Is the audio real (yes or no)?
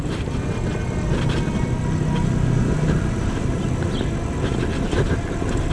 yes